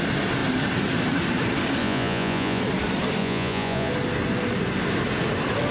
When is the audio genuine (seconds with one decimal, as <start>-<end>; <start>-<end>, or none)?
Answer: 0.0-1.8; 2.6-3.2; 3.9-5.7